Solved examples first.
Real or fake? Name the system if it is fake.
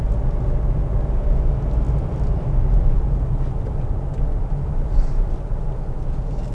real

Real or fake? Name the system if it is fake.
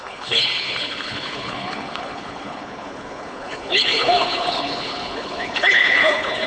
fake, codec, HILCodec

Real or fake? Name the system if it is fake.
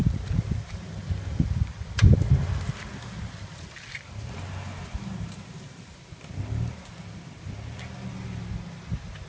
real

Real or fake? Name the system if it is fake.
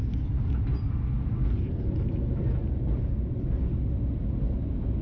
real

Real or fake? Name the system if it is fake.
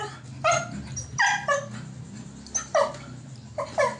real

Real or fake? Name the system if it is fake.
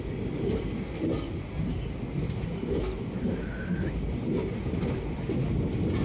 real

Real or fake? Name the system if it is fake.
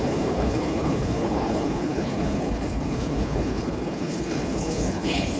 fake, codec, HILCodec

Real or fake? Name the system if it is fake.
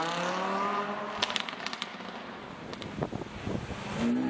real